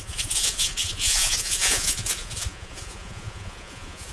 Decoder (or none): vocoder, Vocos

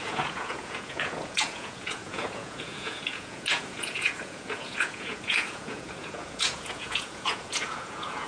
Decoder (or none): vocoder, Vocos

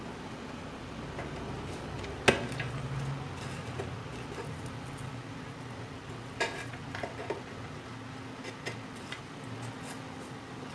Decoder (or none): none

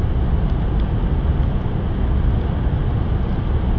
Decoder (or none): none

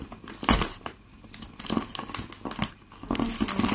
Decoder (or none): none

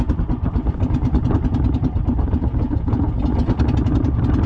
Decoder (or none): none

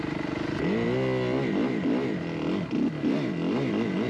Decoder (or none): none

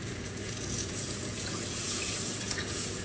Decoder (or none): vocoder, Vocos